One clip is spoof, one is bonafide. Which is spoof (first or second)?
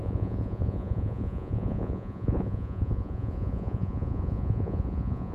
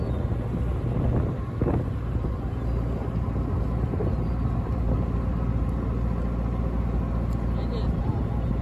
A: first